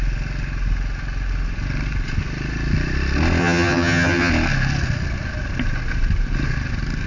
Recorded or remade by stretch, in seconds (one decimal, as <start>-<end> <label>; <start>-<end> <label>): 0.0-3.4 recorded; 3.4-4.3 remade; 4.3-7.1 recorded